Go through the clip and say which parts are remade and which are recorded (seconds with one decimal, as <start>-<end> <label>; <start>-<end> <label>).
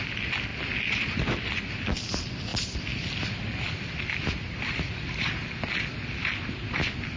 0.0-2.5 recorded; 2.5-5.3 remade; 5.3-7.2 recorded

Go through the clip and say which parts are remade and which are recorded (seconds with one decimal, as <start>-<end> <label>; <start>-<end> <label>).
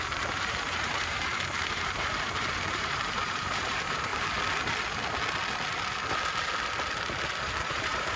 0.0-4.1 remade; 4.1-7.4 recorded; 7.4-8.2 remade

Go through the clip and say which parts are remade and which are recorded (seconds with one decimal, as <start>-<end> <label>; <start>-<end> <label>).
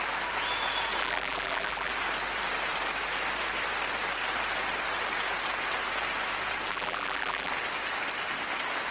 0.0-1.0 recorded; 1.0-1.9 remade; 1.9-6.7 recorded; 6.7-7.5 remade; 7.5-8.9 recorded